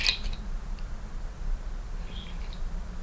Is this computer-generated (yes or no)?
no